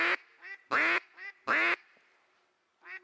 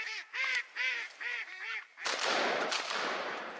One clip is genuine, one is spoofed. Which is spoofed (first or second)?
second